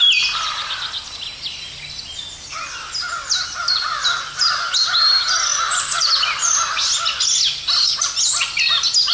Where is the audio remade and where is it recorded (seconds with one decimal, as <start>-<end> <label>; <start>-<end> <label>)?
0.0-5.5 recorded; 5.5-6.1 remade; 6.1-9.1 recorded